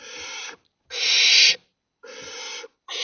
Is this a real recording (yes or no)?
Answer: yes